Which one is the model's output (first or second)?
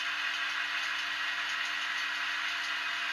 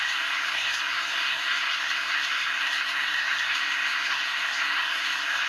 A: second